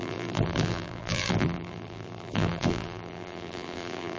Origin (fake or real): fake